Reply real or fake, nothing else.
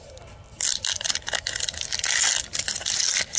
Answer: real